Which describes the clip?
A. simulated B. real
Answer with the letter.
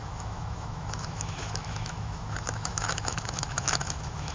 A